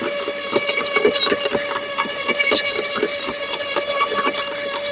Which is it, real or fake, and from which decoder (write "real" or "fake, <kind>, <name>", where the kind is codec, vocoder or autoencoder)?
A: real